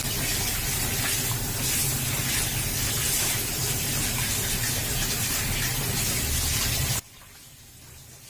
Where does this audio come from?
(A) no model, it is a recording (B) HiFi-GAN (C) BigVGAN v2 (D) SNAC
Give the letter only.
A